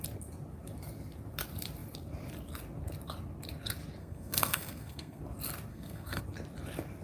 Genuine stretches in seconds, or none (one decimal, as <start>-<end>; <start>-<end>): 0.0-4.0; 5.2-5.7; 6.2-7.0